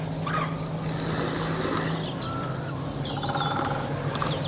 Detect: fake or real fake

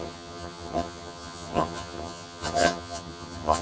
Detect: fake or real fake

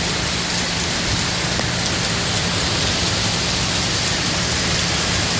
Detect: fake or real real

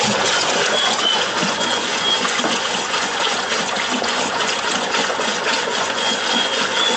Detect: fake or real fake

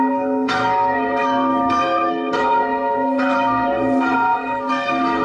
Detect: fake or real fake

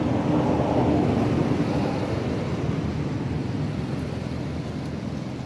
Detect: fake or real real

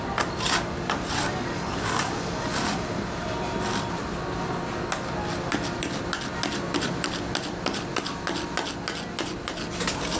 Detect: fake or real real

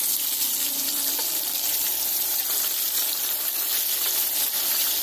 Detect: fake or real fake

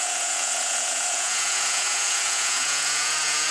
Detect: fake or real fake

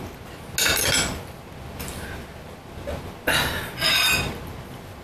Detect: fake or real real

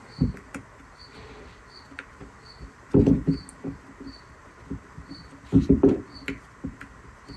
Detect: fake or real real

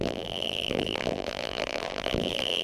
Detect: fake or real fake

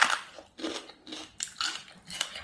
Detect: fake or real real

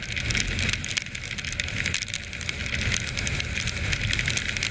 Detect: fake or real real